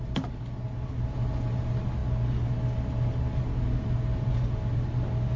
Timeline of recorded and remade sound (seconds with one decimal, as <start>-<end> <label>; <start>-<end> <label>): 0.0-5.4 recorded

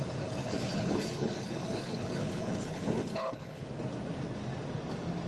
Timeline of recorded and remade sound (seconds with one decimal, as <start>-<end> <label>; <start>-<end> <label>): 0.0-0.4 recorded; 0.4-3.6 remade; 3.6-5.3 recorded

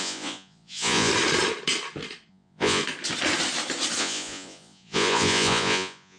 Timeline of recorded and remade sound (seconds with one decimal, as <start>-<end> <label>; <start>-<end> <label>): 0.0-1.1 remade; 1.1-2.3 recorded; 2.3-2.8 remade; 2.8-4.0 recorded; 4.0-6.2 remade

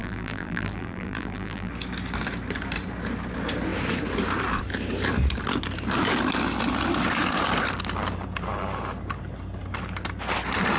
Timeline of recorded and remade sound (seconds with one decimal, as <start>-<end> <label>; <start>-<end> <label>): 0.0-1.7 remade; 1.7-10.8 recorded

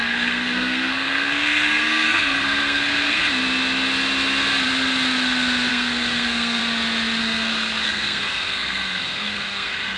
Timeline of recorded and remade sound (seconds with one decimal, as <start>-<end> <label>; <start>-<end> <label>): 0.0-3.2 remade; 3.2-5.7 recorded; 5.7-6.6 remade; 6.6-7.2 recorded; 7.2-10.0 remade

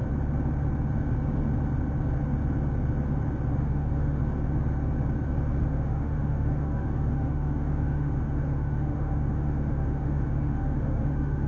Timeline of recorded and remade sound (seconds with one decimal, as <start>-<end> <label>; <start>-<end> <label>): 0.0-3.5 recorded; 3.5-4.2 remade; 4.2-5.7 recorded; 5.7-11.5 remade